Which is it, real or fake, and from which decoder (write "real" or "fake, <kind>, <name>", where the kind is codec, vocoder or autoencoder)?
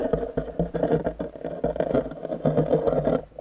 real